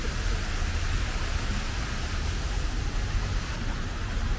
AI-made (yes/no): no